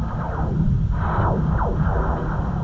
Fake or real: real